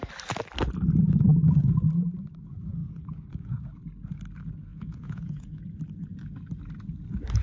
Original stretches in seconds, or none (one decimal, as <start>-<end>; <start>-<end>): 0.0-4.7; 5.6-7.4